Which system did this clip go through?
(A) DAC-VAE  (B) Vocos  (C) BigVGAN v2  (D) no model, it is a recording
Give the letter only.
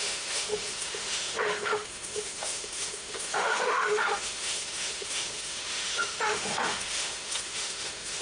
A